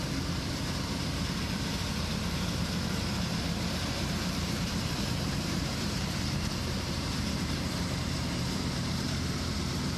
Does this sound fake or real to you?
fake